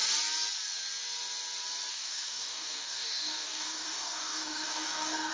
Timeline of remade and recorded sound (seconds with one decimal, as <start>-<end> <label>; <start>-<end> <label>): 0.0-1.9 recorded; 1.9-5.3 remade